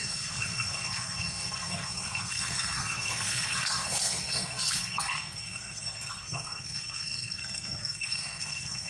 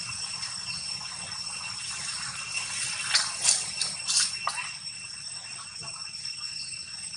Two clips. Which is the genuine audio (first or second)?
second